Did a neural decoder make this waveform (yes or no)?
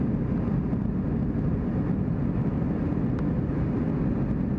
no